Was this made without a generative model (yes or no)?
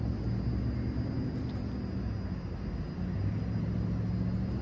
yes